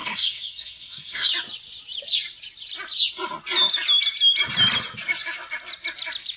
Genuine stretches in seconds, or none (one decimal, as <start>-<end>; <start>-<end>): 1.3-6.4